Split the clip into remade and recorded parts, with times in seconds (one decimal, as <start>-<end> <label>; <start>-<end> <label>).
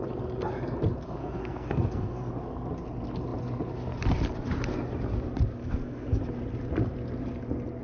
0.0-1.2 recorded; 1.2-2.3 remade; 2.3-5.6 recorded; 5.6-6.2 remade; 6.2-7.8 recorded